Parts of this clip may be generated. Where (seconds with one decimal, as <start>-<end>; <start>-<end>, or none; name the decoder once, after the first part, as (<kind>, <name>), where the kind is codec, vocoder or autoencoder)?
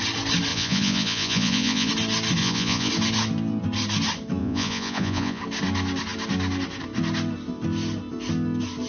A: 0.5-1.9 (vocoder, Vocos); 2.4-2.9; 4.4-5.4